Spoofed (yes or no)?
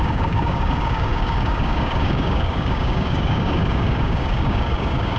yes